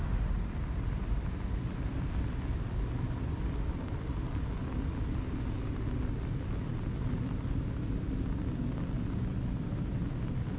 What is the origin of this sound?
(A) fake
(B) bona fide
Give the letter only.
B